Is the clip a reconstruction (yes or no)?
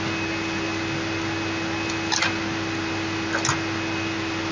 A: no